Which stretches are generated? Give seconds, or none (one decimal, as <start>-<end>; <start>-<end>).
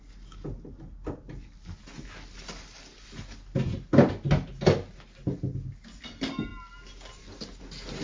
none